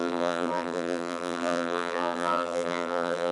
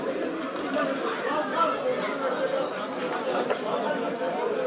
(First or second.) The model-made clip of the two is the first